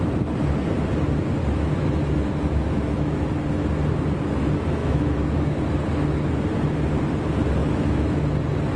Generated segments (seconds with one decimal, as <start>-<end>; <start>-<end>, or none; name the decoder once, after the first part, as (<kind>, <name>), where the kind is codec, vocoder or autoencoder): 1.4-3.3 (autoencoder, DAC-VAE); 4.8-5.6; 7.6-8.2